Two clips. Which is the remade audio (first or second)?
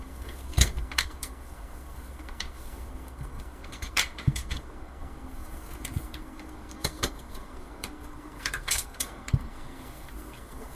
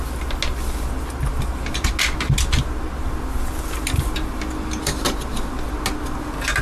first